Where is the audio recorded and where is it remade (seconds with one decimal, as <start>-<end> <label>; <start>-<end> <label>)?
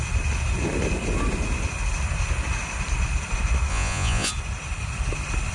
0.0-3.7 recorded; 3.7-4.3 remade; 4.3-5.5 recorded